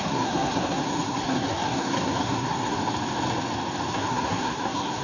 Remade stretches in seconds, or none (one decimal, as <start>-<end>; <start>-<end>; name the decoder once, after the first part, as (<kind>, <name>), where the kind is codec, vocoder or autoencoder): 0.0-2.8 (codec, SNAC); 3.9-5.0